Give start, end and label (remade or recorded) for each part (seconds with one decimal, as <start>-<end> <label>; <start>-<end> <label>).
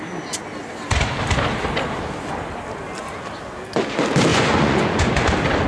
0.0-4.3 recorded; 4.3-5.1 remade; 5.1-5.7 recorded